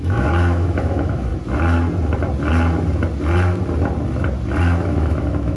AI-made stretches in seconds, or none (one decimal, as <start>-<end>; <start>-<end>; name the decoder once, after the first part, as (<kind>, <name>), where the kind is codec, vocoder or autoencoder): 0.0-1.3 (autoencoder, DAC-VAE); 4.6-5.6